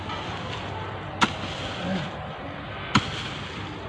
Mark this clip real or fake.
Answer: real